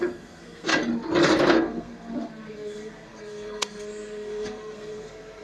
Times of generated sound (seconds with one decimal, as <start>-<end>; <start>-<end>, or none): 0.0-0.7; 1.4-5.4